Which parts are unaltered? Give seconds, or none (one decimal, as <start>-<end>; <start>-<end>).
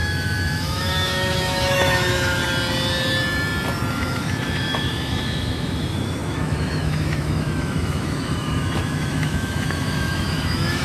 2.4-3.9